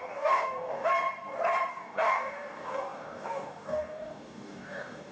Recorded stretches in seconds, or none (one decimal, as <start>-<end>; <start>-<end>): 0.9-1.7